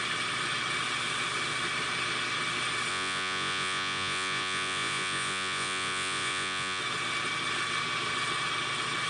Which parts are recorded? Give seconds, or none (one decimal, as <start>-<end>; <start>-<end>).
0.0-2.9; 6.8-9.1